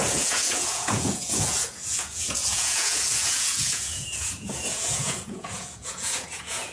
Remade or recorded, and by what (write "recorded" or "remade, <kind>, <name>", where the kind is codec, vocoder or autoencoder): remade, vocoder, Vocos